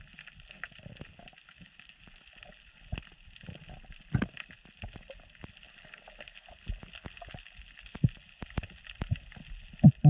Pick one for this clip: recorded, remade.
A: recorded